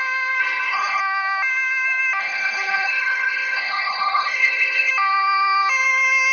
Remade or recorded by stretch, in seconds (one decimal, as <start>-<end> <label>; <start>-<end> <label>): 0.0-0.4 recorded; 0.4-1.0 remade; 1.0-2.2 recorded; 2.2-4.9 remade; 4.9-6.3 recorded